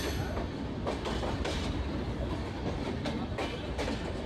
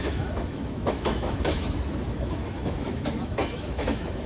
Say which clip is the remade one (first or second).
second